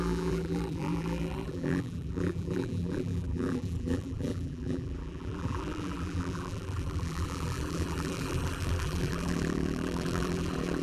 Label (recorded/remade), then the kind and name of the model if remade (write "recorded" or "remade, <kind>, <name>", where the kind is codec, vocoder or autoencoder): remade, vocoder, BigVGAN v2